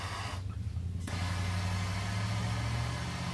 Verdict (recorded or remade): recorded